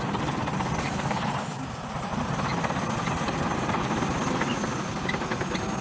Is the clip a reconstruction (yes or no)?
no